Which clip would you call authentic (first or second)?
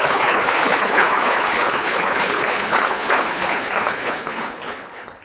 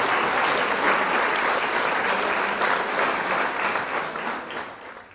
second